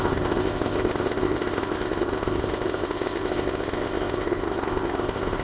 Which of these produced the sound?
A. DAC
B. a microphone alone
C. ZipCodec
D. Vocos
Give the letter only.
C